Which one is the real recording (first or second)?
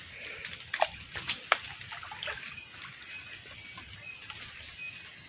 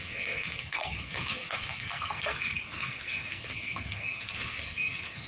first